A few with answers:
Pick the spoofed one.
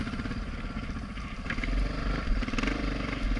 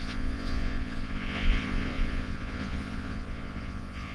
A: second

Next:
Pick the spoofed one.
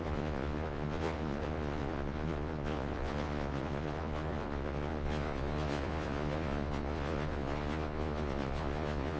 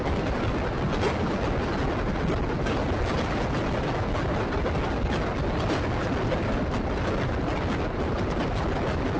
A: first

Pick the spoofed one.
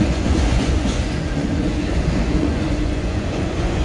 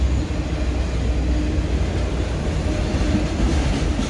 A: first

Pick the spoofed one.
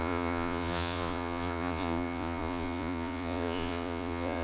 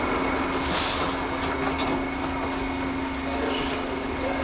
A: first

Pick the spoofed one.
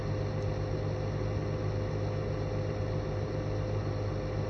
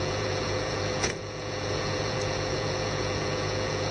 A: second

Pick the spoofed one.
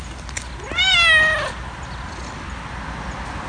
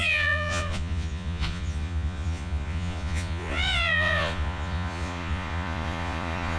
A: second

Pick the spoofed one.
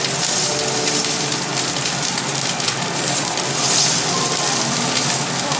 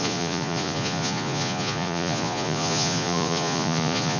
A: second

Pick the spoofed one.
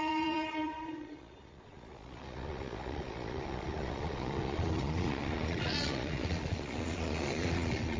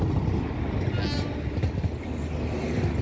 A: first